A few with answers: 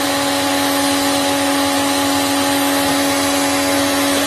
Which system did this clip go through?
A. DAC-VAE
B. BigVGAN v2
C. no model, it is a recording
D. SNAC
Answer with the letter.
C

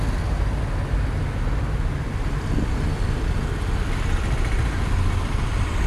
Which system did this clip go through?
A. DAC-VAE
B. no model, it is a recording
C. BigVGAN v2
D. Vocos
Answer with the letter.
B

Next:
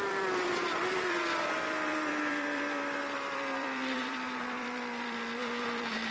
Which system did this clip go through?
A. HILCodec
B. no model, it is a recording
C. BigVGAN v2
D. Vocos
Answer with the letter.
C